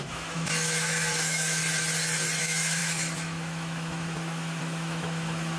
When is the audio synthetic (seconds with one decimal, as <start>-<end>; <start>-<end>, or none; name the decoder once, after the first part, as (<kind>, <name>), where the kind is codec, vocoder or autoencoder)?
0.0-1.6 (autoencoder, DAC-VAE); 2.4-5.6